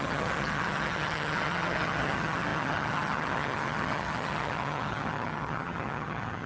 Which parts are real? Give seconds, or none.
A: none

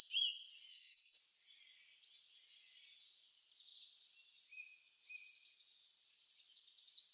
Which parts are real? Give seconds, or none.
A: 0.0-0.7; 1.2-7.1

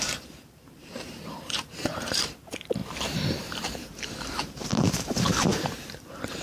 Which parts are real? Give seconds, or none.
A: none

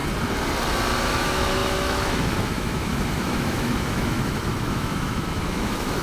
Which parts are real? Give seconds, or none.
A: 0.0-1.0

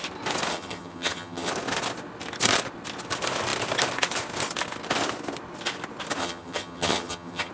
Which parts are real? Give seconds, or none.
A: 0.0-0.5; 1.5-6.2

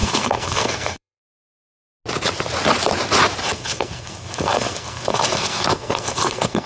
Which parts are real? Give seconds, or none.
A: 1.2-3.4

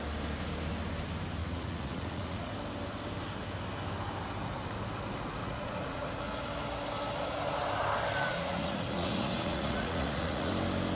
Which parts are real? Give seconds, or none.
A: 0.0-1.4; 2.5-5.4; 6.2-8.3; 10.5-11.0